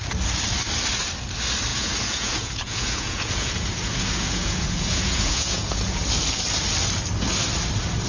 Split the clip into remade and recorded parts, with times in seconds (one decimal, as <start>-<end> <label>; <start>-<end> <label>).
0.0-1.7 recorded; 1.7-6.0 remade; 6.0-8.1 recorded